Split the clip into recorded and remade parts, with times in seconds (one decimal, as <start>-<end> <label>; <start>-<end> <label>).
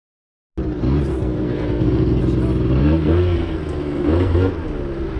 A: 0.0-1.1 recorded; 1.1-2.2 remade; 2.2-2.8 recorded; 2.8-4.5 remade; 4.5-5.2 recorded